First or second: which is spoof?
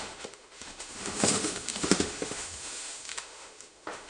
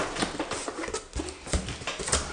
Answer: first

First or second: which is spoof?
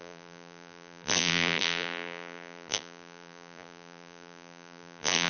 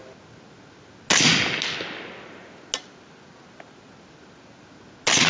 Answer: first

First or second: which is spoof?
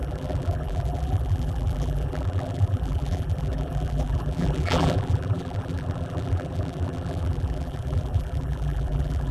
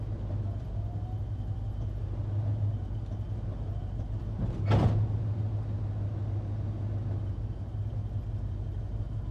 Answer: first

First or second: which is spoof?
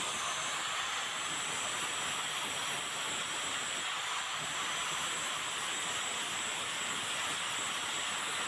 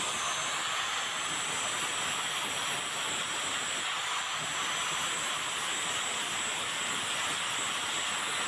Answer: first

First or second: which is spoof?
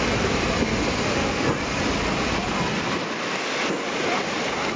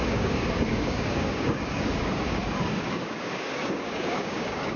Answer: second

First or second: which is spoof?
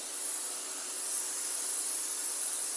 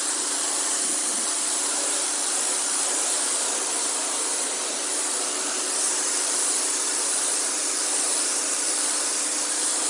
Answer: second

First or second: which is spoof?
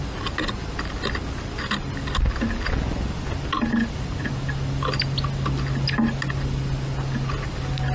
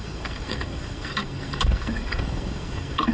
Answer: second